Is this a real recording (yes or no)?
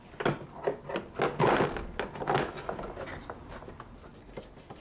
yes